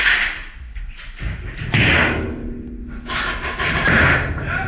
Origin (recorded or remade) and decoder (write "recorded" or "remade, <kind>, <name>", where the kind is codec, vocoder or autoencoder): recorded